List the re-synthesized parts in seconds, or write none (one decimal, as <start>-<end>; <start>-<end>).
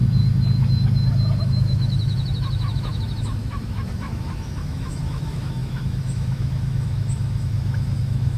1.4-8.4